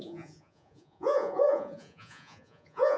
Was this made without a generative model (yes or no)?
no